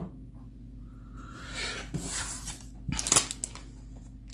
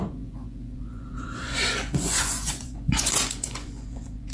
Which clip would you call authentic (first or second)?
first